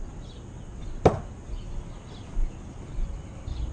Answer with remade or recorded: recorded